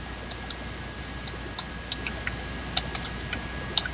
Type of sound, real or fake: real